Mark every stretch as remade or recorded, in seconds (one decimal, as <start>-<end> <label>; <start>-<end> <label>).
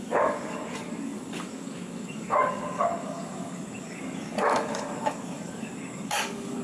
0.0-6.6 remade